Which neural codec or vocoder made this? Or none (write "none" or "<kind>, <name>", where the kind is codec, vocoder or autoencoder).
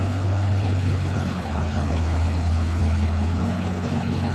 codec, HILCodec